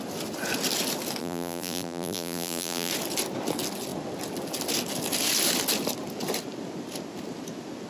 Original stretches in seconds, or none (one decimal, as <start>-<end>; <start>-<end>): 0.0-1.2; 2.9-7.9